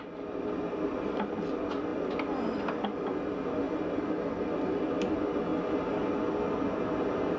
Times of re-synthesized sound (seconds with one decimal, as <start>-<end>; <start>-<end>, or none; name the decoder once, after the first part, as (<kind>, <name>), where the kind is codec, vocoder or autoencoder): none